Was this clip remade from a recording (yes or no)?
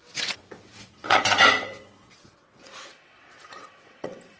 yes